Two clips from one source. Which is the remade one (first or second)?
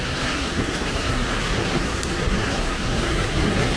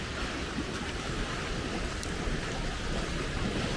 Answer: first